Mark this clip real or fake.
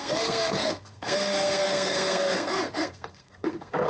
fake